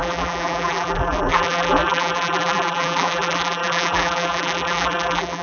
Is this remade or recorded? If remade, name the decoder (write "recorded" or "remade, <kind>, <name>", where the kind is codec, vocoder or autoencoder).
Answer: remade, vocoder, BigVGAN v2